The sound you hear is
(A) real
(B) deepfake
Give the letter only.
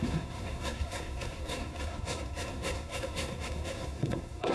B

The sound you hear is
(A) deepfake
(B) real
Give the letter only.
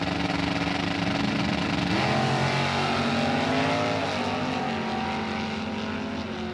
B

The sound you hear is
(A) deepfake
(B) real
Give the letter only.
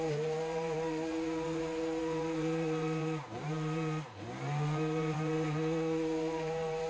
A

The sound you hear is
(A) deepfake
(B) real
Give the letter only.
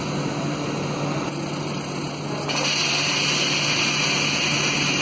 B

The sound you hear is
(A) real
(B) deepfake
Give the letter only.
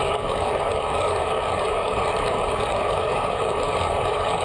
B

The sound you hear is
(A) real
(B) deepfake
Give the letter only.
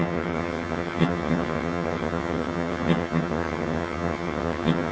B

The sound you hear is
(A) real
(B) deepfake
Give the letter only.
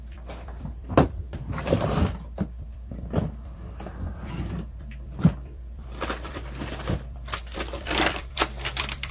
B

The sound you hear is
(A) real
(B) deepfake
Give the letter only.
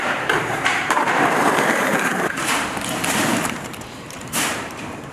B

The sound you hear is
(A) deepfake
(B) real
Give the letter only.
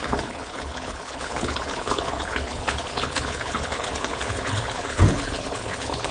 A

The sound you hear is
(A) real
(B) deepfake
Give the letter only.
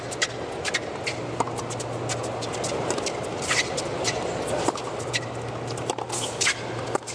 A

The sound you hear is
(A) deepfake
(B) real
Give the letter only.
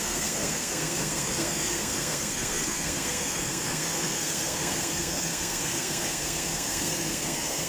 A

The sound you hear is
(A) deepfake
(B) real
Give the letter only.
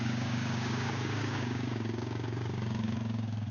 A